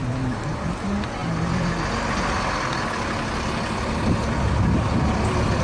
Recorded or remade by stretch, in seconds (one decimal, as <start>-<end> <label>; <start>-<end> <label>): 0.0-5.6 recorded